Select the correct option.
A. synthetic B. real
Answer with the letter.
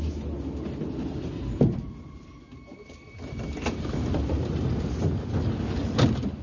B